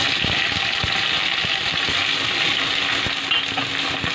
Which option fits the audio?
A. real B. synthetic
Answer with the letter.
A